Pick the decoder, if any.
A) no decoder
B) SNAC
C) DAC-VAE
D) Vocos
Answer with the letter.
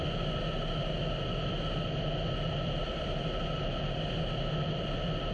A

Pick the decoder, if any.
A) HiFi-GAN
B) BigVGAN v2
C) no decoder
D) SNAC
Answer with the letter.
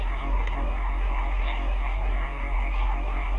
D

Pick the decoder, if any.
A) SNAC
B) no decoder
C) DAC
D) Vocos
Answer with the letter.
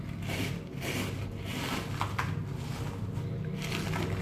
B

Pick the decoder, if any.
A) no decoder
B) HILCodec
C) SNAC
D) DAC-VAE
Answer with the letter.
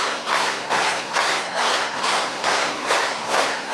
C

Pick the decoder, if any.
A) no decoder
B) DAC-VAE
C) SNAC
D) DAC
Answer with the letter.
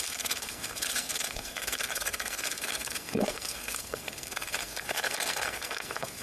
C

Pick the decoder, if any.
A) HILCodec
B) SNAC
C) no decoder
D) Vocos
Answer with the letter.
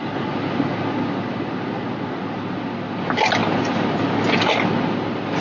C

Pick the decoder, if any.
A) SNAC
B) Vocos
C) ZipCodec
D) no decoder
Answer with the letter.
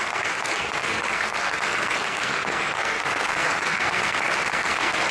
A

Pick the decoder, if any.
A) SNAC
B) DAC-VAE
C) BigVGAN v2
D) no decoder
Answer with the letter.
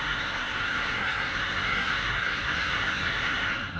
A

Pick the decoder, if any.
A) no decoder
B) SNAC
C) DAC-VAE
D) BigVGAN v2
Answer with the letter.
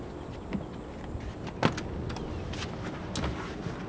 A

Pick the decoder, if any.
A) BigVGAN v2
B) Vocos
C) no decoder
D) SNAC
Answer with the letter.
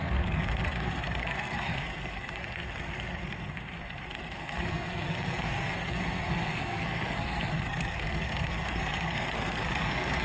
D